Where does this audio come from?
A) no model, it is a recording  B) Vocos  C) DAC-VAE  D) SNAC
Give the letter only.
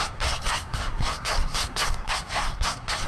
D